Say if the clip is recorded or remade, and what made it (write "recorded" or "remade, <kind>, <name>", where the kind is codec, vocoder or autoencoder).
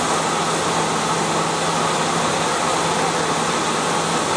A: recorded